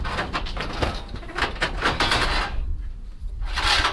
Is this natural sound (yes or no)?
yes